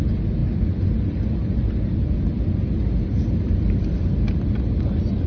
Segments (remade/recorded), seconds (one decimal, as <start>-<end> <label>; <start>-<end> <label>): 0.0-0.4 recorded; 0.4-2.1 remade; 2.1-3.2 recorded; 3.2-4.0 remade; 4.0-5.3 recorded